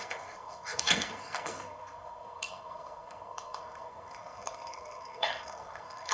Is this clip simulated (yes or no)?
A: yes